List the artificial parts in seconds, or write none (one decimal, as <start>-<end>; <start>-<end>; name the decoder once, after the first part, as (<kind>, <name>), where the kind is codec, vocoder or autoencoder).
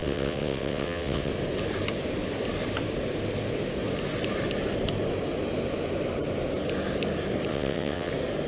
0.0-1.3 (vocoder, WaveNeXt); 7.5-8.1